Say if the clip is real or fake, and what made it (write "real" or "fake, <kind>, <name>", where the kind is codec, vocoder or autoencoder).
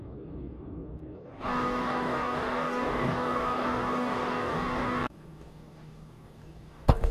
fake, codec, DAC